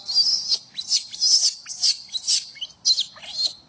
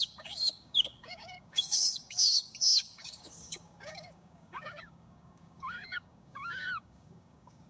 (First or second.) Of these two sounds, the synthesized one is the second